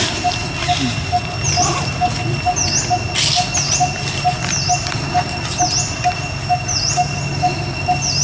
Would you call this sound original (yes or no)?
yes